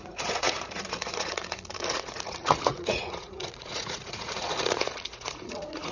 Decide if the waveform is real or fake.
fake